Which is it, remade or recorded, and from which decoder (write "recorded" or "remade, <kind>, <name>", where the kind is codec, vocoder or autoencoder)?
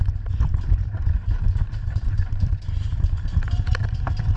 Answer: remade, vocoder, BigVGAN v2